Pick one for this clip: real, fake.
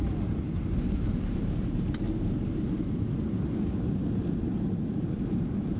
fake